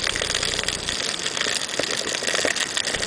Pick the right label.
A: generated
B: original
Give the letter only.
B